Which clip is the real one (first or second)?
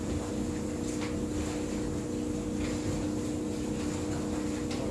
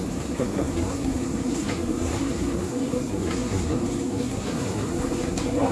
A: first